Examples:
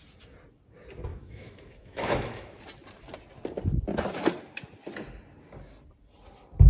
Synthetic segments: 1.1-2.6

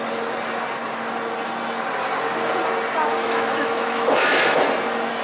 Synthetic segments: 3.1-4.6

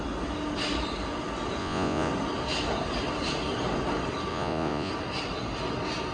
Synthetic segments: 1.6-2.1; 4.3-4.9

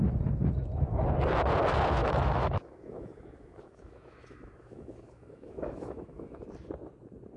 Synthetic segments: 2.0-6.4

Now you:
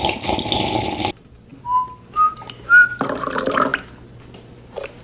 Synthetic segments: none

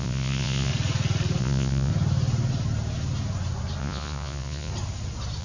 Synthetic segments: 0.0-0.7; 1.4-1.9; 3.8-4.7

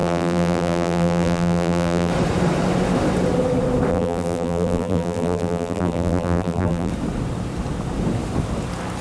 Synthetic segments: 0.0-2.1; 3.9-6.9

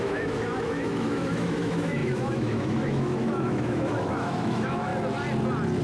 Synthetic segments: 0.0-4.9